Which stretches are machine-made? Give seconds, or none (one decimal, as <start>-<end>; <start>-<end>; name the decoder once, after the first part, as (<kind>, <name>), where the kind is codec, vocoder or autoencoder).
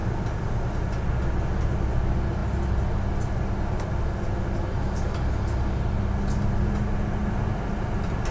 none